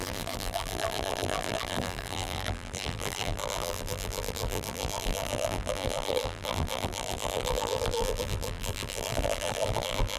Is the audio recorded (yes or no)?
no